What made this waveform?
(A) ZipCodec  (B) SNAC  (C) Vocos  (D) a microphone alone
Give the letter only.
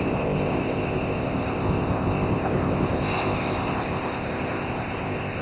A